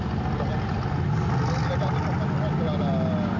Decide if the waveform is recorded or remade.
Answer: recorded